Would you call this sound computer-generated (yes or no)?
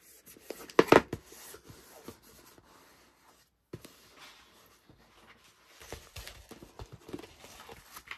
no